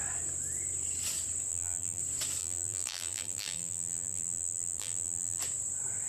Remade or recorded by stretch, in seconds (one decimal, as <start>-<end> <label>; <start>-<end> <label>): 0.0-1.5 recorded; 1.5-2.0 remade; 2.0-2.4 recorded; 2.4-5.4 remade; 5.4-6.1 recorded